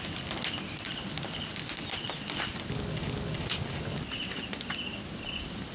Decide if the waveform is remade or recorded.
recorded